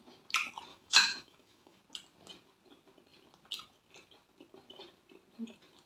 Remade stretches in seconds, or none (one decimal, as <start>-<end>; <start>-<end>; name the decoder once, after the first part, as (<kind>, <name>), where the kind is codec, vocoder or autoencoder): 0.7-1.8 (autoencoder, DAC-VAE)